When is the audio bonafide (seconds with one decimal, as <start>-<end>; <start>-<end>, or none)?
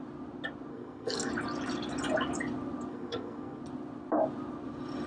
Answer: 0.0-0.7; 1.3-2.9; 3.6-5.1